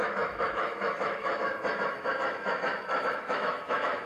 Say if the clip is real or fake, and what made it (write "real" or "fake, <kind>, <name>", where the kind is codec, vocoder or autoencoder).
fake, autoencoder, DAC-VAE